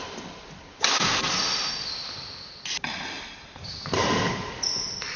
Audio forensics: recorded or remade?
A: recorded